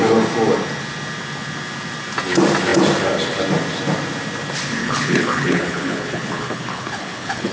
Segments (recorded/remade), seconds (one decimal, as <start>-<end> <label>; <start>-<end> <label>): 0.0-4.8 recorded; 4.8-7.5 remade